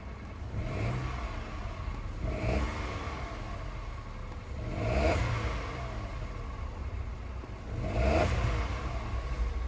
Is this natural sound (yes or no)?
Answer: yes